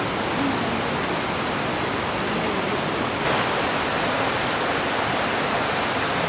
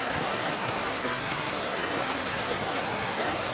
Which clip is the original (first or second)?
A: first